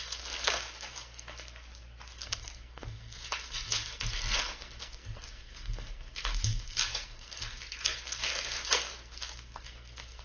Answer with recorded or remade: remade